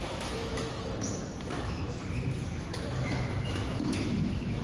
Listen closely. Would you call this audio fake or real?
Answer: fake